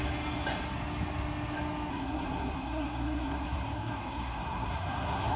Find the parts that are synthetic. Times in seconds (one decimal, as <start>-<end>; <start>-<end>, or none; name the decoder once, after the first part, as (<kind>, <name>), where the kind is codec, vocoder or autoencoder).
1.9-5.4 (codec, SNAC)